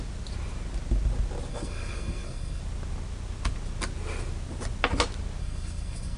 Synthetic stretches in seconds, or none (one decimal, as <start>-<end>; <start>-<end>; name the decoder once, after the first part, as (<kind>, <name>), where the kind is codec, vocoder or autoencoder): 1.5-2.6 (codec, SNAC); 5.4-6.2